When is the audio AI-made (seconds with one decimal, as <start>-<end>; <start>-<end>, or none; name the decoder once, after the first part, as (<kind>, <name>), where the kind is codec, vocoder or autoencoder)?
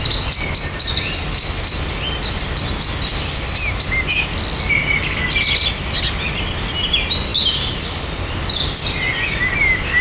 none